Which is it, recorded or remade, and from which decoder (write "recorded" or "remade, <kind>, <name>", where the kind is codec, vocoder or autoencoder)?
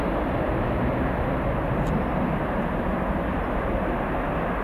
recorded